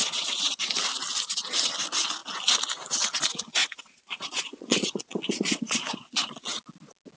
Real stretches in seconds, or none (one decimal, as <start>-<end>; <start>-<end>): 0.7-3.6; 6.6-7.2